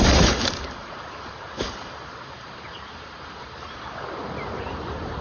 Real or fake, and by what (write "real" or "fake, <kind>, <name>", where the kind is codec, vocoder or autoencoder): fake, vocoder, BigVGAN v2